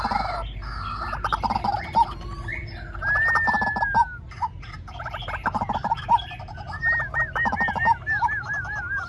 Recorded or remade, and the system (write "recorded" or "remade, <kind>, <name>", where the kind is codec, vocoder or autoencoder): recorded